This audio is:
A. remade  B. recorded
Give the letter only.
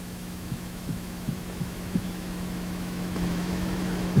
A